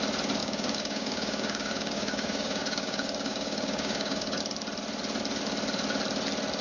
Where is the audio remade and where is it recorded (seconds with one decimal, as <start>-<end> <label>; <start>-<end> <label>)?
0.0-0.4 recorded; 0.4-4.4 remade; 4.4-6.6 recorded